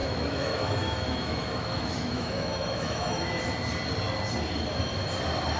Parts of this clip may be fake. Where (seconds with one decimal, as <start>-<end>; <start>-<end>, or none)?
0.0-3.4